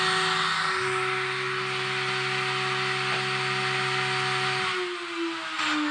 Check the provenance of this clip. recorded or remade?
recorded